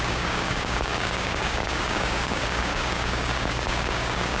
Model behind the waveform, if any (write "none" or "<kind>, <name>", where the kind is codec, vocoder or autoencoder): codec, DAC